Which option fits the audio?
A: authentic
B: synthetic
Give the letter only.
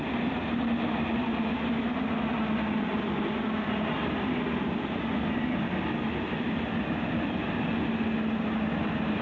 A